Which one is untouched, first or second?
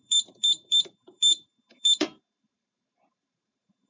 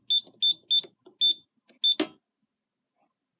second